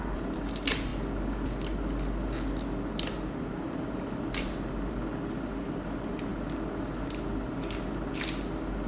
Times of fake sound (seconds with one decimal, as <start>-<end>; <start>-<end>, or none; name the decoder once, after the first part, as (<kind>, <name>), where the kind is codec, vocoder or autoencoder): none